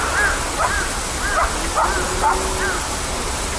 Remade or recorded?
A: recorded